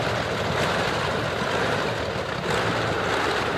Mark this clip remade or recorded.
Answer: recorded